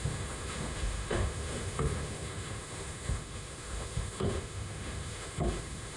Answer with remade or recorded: remade